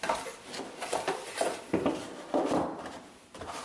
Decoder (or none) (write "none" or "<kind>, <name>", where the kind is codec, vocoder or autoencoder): vocoder, BigVGAN v2